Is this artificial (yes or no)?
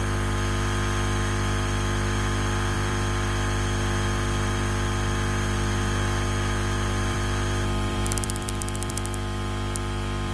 yes